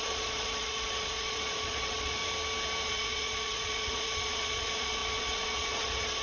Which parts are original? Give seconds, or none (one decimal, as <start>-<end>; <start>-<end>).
2.2-2.8